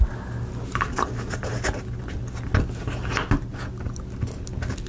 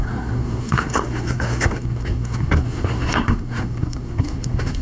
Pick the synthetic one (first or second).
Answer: second